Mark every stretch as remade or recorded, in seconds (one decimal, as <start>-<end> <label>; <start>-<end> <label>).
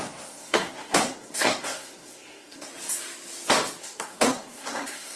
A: 0.0-2.7 remade; 2.7-3.8 recorded; 3.8-5.2 remade